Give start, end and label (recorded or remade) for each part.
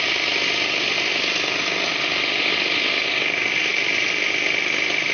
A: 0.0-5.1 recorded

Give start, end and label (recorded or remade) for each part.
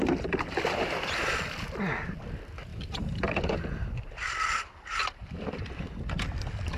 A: 0.0-6.8 recorded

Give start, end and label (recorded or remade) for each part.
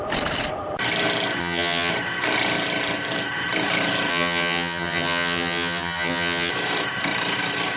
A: 0.0-1.4 recorded; 1.4-1.9 remade; 1.9-4.1 recorded; 4.1-6.5 remade; 6.5-7.8 recorded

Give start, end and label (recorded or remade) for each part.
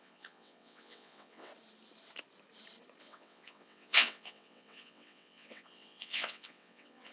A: 0.0-1.5 remade; 1.5-3.0 recorded; 3.0-7.1 remade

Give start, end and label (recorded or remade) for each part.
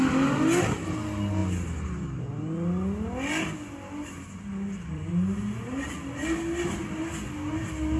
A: 0.0-8.0 recorded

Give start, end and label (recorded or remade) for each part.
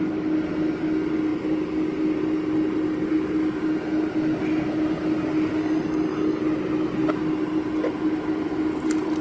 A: 0.0-5.6 recorded; 5.6-6.4 remade; 6.4-9.2 recorded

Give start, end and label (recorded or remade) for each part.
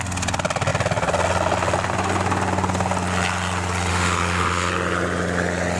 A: 0.0-3.9 recorded; 3.9-4.7 remade; 4.7-5.8 recorded